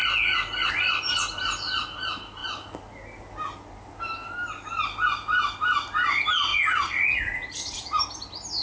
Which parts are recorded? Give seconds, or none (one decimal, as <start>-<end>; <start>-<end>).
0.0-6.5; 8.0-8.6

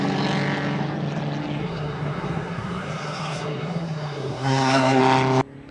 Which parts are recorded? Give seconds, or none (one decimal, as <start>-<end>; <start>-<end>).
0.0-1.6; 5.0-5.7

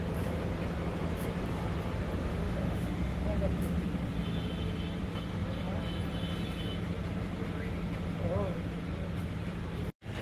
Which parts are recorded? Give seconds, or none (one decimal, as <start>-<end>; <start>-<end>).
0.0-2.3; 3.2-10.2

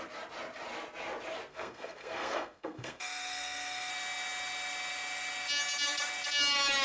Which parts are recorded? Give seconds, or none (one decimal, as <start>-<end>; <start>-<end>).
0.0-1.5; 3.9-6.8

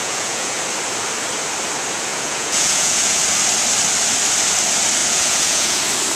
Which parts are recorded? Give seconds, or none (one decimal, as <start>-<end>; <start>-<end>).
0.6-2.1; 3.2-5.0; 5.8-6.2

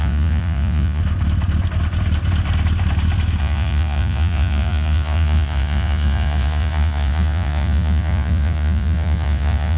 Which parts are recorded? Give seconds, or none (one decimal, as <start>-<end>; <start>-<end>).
1.0-3.4

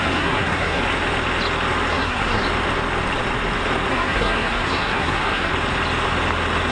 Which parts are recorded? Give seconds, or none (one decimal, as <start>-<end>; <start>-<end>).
0.8-1.9; 2.4-3.9; 5.5-6.7